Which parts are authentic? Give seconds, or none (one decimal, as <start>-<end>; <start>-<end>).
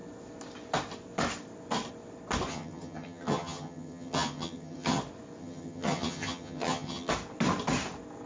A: 0.0-2.5; 5.0-5.4; 7.1-8.3